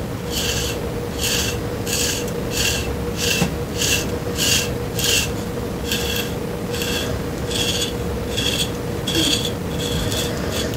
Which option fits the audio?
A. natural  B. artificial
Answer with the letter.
A